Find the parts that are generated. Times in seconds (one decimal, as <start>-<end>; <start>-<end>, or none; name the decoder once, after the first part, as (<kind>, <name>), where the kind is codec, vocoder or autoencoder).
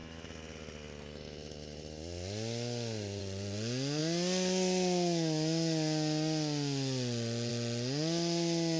none